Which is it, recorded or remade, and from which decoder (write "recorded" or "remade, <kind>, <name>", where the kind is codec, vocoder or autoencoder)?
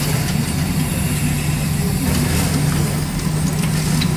recorded